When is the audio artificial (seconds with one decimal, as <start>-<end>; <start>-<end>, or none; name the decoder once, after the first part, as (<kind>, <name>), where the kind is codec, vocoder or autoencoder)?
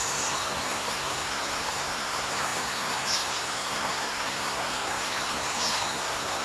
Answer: 0.0-6.4 (codec, SNAC)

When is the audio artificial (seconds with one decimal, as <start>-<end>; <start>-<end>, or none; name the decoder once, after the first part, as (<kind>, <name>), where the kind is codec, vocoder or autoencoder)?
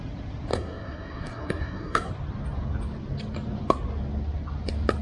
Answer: 0.5-2.1 (codec, SNAC)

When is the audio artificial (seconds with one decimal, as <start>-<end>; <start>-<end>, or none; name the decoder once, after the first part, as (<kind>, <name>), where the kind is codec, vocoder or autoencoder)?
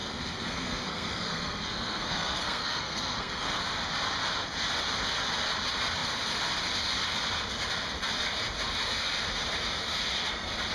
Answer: 0.0-3.6 (codec, SNAC)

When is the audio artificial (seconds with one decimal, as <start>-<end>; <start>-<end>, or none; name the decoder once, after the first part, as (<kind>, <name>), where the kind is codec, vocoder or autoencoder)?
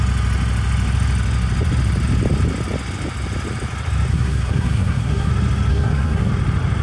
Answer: 4.1-5.3 (codec, SNAC); 5.7-6.3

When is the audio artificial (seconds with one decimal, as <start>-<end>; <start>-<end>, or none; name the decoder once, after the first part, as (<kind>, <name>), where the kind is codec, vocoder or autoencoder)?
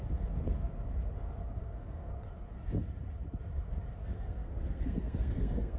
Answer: 1.6-2.1 (codec, SNAC); 4.0-5.8